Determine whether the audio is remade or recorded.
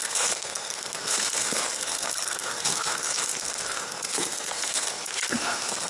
remade